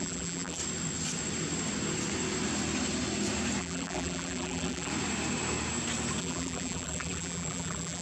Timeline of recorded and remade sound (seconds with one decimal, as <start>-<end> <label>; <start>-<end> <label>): 0.0-0.6 remade; 0.6-3.6 recorded; 3.6-4.9 remade; 4.9-6.2 recorded; 6.2-8.0 remade